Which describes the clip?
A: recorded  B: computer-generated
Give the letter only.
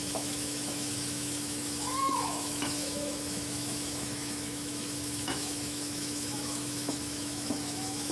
B